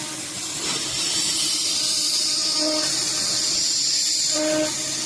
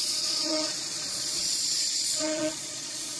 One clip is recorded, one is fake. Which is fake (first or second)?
second